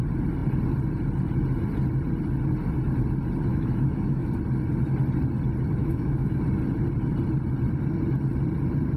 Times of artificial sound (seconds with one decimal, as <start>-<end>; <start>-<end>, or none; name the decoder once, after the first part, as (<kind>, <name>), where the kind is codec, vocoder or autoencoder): 3.5-4.3 (autoencoder, DAC-VAE); 5.8-6.4